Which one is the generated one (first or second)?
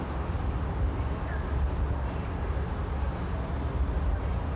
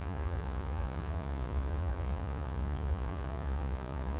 second